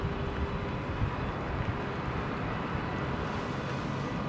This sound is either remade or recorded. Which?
recorded